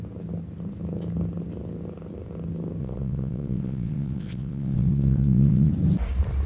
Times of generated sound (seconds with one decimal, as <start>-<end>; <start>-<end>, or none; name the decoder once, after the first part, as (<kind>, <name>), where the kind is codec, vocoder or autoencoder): 2.8-5.7 (vocoder, WaveNeXt)